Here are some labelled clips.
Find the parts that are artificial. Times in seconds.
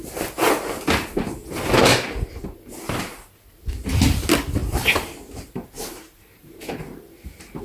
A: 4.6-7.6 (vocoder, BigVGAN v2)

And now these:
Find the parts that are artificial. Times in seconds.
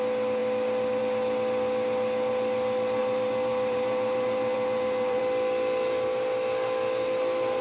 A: 3.0-5.2 (vocoder, BigVGAN v2)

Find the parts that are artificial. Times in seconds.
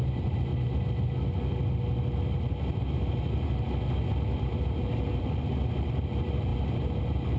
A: 0.0-0.5 (vocoder, BigVGAN v2); 4.4-7.4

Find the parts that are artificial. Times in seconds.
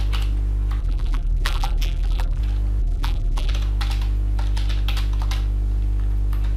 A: 0.8-2.4 (vocoder, BigVGAN v2); 2.8-3.5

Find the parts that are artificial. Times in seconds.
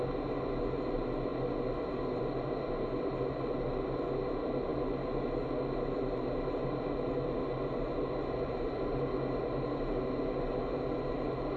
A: none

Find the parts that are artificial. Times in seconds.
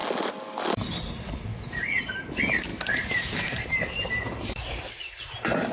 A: 2.0-5.7 (vocoder, BigVGAN v2)